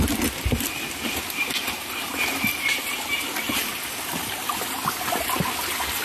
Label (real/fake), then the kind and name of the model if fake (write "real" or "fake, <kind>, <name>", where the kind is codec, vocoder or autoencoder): real